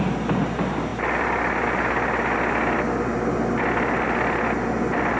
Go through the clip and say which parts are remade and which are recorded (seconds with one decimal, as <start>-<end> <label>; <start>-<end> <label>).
0.0-5.2 recorded